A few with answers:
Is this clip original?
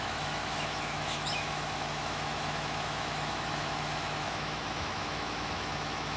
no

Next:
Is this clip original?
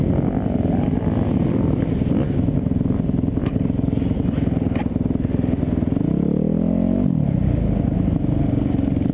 yes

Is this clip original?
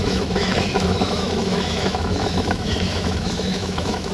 no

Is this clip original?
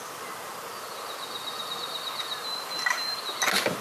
yes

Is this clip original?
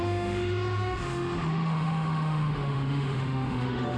no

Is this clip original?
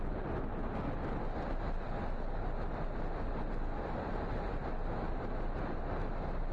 yes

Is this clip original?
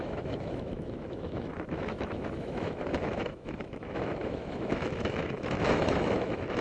no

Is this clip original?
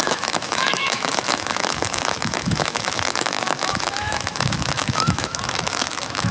no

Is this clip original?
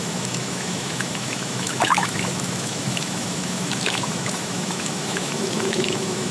no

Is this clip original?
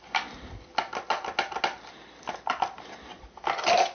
yes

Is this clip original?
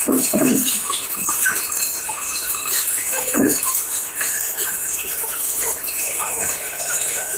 no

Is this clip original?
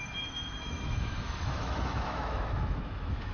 no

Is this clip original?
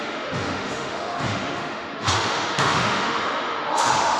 no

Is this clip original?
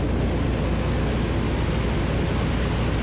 yes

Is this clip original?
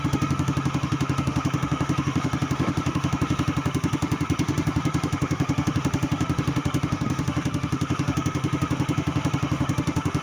no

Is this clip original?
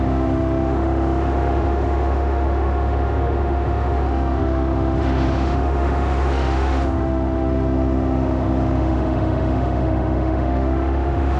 no